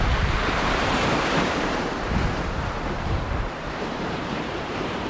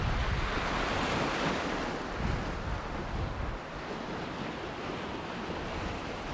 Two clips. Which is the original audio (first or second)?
second